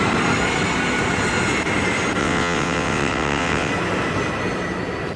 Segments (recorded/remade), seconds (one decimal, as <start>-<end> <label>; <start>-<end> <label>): 0.0-2.2 recorded; 2.2-3.7 remade; 3.7-5.2 recorded